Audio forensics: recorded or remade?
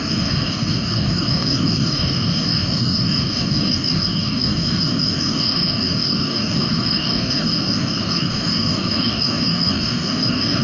remade